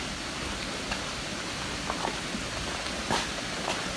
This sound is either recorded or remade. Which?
recorded